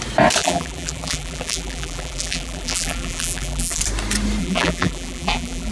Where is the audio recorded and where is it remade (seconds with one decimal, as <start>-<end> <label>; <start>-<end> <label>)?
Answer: 0.0-0.4 recorded; 0.4-3.8 remade; 3.8-4.4 recorded; 4.4-5.7 remade